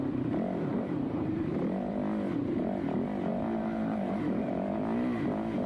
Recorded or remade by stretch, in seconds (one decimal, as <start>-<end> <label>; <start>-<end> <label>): 0.0-0.7 recorded; 0.7-1.9 remade; 1.9-3.3 recorded; 3.3-4.5 remade; 4.5-5.7 recorded